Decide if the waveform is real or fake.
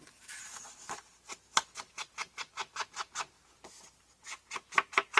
real